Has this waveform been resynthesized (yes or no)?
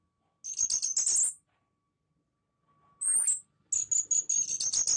no